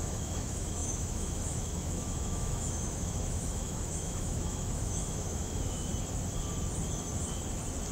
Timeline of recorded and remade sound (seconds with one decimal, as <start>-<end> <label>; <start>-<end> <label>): 0.0-5.9 remade; 5.9-7.9 recorded